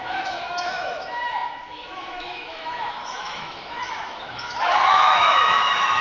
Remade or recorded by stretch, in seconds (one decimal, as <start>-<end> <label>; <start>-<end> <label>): 0.0-6.0 remade